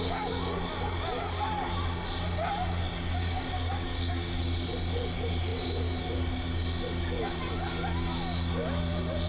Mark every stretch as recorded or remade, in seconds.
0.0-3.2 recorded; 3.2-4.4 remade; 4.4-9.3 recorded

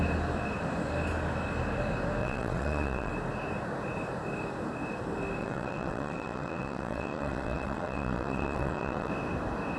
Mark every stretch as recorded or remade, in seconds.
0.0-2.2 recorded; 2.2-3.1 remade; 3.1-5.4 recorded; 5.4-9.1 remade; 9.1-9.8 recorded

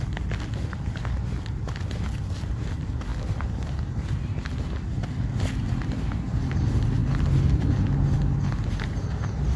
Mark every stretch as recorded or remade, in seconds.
0.0-9.6 recorded

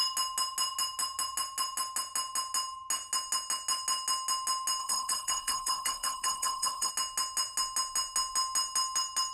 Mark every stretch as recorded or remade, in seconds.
0.0-4.8 recorded; 4.8-6.9 remade; 6.9-9.3 recorded